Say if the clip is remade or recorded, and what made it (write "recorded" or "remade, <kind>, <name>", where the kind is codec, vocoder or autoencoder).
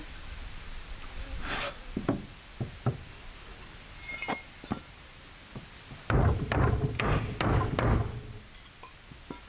recorded